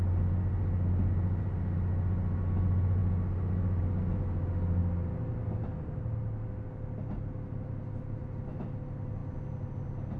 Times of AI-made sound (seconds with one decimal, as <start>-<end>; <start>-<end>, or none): none